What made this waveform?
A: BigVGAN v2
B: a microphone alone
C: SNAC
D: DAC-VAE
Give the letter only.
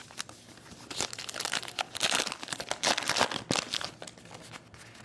B